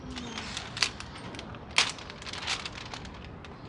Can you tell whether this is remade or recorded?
recorded